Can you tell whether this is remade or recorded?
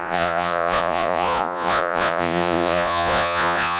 remade